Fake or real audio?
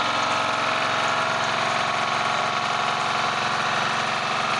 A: real